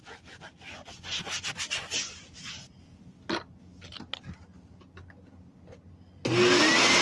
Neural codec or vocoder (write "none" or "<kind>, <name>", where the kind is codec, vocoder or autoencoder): none